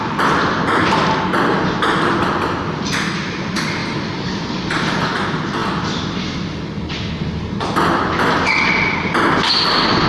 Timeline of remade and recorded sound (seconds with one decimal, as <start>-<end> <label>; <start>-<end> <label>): 0.0-3.8 recorded; 3.8-4.9 remade; 4.9-10.1 recorded